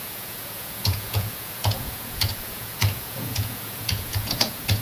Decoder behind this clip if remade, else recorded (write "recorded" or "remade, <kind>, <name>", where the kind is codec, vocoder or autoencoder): remade, vocoder, Vocos